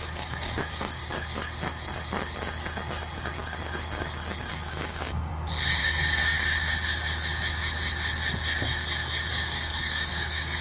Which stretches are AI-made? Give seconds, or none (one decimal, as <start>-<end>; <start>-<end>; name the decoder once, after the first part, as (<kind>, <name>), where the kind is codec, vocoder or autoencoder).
0.0-1.0 (codec, DAC); 4.5-5.3; 5.8-6.2; 9.3-10.6